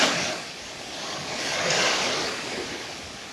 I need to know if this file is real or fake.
fake